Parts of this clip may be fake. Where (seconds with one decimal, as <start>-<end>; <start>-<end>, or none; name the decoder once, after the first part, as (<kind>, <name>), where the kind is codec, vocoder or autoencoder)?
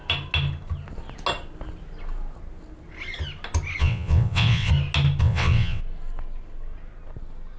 3.8-4.7 (vocoder, WaveNeXt); 5.2-5.8